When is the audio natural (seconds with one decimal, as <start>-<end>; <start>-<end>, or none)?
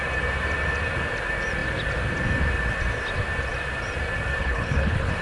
0.0-4.4